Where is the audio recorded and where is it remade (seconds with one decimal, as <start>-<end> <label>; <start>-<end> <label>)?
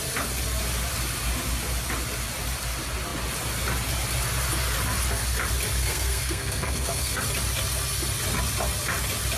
0.0-5.8 recorded; 5.8-7.2 remade; 7.2-9.4 recorded